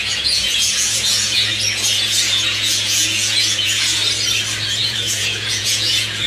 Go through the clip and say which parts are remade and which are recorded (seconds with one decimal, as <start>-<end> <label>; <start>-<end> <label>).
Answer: 0.0-4.0 remade; 4.0-4.8 recorded; 4.8-6.3 remade